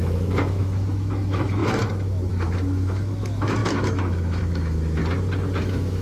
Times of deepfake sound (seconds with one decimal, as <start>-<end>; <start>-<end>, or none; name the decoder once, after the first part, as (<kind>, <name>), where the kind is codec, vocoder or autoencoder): 0.0-5.0 (autoencoder, DAC-VAE); 5.6-6.0